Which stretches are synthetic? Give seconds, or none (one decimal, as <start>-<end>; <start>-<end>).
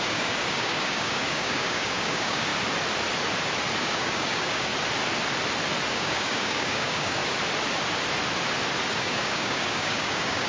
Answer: 0.0-2.5; 3.8-4.7; 5.9-7.2; 9.0-10.5